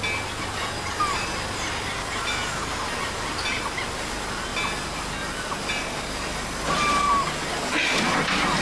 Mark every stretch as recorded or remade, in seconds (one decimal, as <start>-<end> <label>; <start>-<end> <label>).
0.0-8.6 recorded